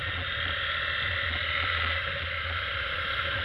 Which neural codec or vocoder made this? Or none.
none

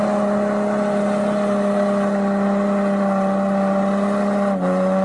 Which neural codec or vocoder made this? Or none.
none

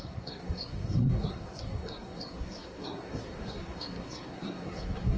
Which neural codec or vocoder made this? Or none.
codec, SNAC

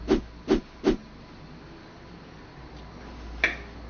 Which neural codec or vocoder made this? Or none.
none